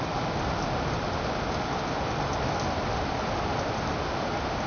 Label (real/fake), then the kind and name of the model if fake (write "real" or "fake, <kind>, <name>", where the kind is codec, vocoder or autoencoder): real